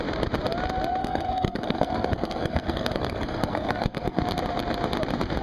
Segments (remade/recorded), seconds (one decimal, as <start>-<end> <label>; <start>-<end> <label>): 0.0-1.0 recorded; 1.0-4.2 remade; 4.2-5.4 recorded